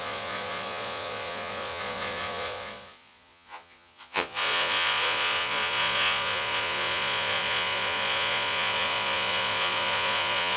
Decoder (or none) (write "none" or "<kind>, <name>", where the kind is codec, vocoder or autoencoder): vocoder, Vocos